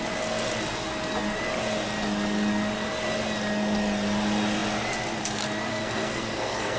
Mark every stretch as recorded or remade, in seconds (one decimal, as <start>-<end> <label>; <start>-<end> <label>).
0.0-5.7 recorded; 5.7-6.8 remade